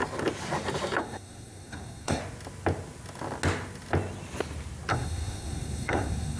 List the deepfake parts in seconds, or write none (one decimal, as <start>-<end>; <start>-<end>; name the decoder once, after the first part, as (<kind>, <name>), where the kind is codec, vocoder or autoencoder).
1.0-2.2 (codec, SNAC); 4.9-6.4